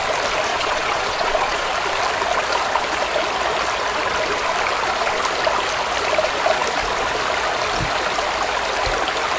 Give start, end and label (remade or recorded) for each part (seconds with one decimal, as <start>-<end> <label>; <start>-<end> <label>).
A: 0.0-0.5 recorded; 0.5-1.7 remade; 1.7-9.4 recorded